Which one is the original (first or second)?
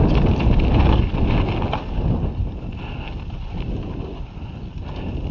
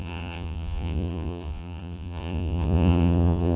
first